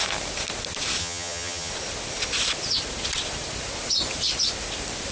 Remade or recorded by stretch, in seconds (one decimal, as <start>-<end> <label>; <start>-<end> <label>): 0.0-1.0 recorded; 1.0-1.7 remade; 1.7-5.1 recorded